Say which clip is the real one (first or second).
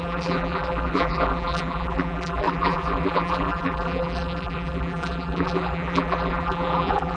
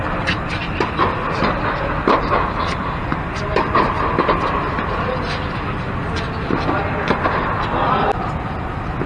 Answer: second